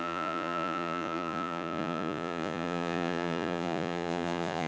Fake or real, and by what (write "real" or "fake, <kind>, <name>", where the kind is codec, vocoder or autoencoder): fake, vocoder, Vocos